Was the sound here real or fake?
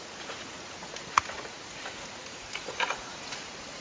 fake